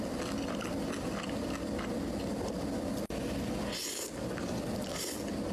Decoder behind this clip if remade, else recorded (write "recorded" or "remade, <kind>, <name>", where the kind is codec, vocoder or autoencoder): recorded